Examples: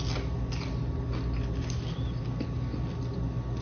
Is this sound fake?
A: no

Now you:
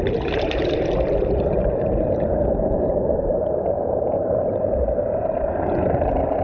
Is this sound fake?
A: yes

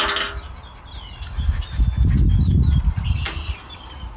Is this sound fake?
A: no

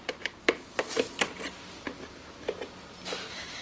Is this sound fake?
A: no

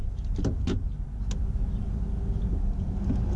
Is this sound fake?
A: no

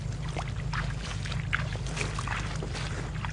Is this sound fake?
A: no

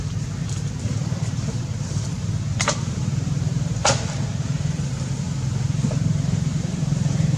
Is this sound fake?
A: yes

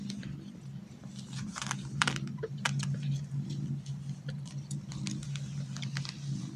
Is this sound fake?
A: yes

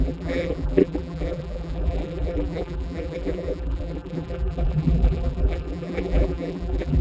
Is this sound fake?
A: yes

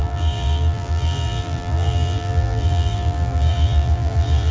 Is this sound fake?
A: yes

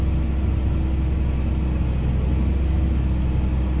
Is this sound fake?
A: no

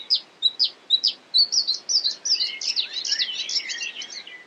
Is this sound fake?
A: no